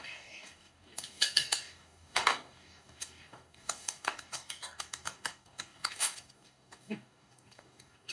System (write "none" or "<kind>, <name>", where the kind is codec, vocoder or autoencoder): codec, DAC